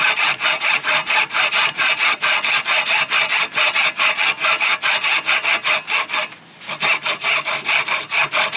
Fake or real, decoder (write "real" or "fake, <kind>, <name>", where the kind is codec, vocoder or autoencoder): real